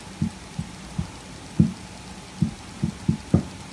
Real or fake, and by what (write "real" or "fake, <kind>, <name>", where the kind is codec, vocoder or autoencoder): real